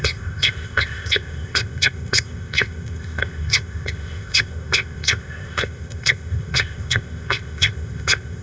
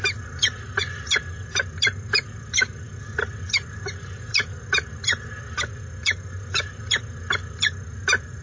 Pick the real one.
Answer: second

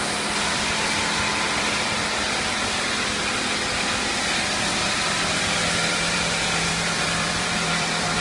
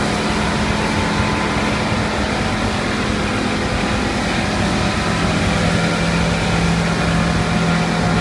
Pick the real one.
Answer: second